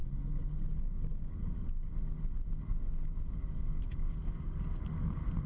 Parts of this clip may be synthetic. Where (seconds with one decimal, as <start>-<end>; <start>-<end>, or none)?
none